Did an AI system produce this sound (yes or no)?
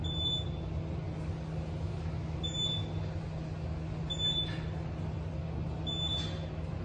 no